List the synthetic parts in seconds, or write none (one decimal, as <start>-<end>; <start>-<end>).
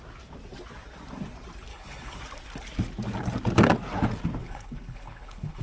1.7-2.2; 4.4-5.6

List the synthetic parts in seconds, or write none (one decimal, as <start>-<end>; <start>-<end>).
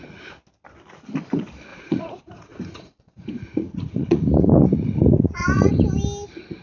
1.7-5.7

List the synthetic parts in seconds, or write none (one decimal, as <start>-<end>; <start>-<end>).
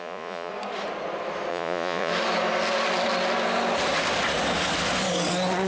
0.0-0.5; 1.5-2.1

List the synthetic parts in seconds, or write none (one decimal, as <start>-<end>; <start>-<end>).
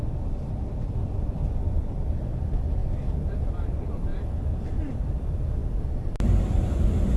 0.0-2.8; 3.5-4.1; 4.9-5.6; 6.4-7.2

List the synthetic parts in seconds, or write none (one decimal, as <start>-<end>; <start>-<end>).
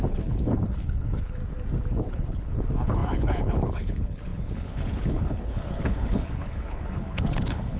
0.0-1.4; 2.0-7.8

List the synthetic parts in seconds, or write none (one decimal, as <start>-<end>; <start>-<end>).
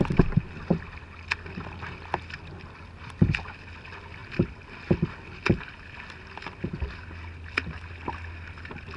none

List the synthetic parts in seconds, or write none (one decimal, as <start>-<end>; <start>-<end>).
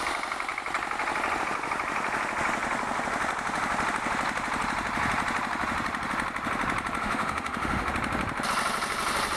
7.0-7.9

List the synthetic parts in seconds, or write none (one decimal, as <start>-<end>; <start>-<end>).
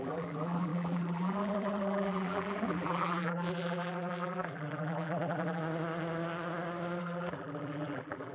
0.0-5.6; 7.0-8.3